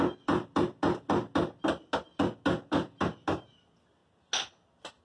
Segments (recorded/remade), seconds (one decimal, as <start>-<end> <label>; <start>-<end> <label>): 0.0-5.0 recorded